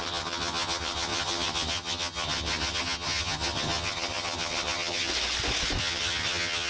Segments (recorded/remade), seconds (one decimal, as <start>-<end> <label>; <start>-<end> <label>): 0.0-5.1 remade; 5.1-5.8 recorded; 5.8-6.7 remade